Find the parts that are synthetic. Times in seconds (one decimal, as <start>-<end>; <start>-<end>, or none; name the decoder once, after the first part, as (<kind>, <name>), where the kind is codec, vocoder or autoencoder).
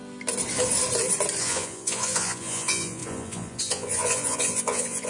1.4-5.1 (vocoder, Vocos)